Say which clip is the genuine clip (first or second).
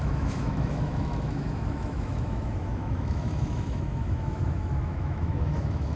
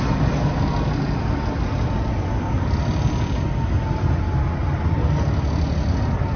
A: second